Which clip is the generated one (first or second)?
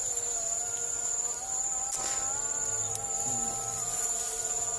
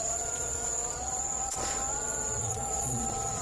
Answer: second